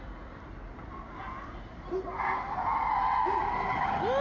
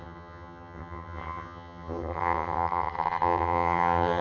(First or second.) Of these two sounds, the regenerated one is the second